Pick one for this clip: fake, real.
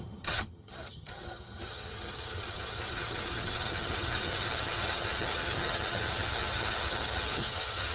fake